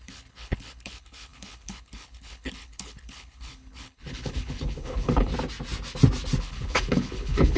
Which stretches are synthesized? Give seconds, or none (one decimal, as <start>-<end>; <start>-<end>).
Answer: 0.0-5.3; 6.4-7.6